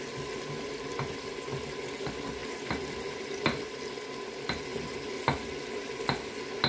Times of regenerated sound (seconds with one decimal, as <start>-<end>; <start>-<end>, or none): 2.4-3.7; 4.7-5.9